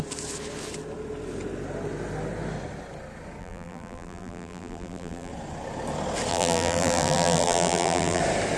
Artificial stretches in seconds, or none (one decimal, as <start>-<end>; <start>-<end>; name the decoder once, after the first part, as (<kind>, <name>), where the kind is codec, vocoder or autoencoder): 3.4-5.3 (vocoder, BigVGAN v2); 6.3-8.2